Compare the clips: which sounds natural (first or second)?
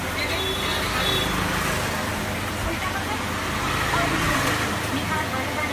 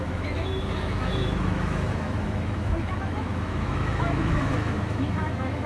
first